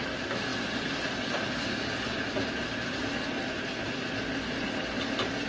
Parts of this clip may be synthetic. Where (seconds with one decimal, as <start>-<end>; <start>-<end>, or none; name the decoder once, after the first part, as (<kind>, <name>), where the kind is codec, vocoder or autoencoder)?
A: none